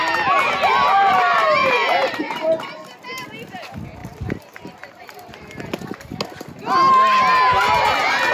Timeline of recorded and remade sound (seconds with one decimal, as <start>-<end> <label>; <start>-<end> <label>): 0.0-1.6 recorded; 1.6-2.2 remade; 2.2-4.0 recorded; 4.0-6.1 remade; 6.1-8.3 recorded